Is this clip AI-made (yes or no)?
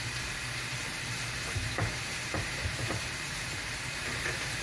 yes